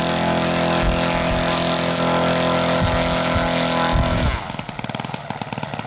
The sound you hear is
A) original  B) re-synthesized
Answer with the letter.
A